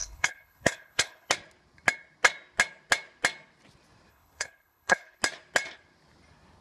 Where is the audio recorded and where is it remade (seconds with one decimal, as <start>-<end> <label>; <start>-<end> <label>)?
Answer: 0.0-1.3 remade; 1.3-4.1 recorded; 4.1-5.2 remade; 5.2-6.6 recorded